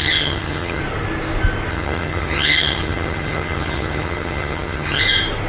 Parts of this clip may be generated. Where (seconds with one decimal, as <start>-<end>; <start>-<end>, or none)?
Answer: 0.0-0.8; 1.7-5.0